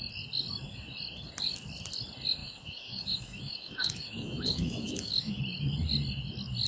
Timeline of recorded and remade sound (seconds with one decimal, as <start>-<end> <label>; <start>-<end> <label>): 0.0-2.4 recorded; 2.4-5.4 remade; 5.4-6.7 recorded